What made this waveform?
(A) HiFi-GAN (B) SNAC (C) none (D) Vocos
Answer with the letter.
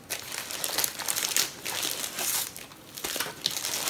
C